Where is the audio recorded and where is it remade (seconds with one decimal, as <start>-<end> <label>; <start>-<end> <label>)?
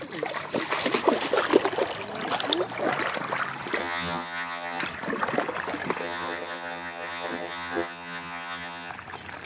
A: 0.0-3.8 recorded; 3.8-4.8 remade; 4.8-6.0 recorded; 6.0-8.9 remade; 8.9-9.5 recorded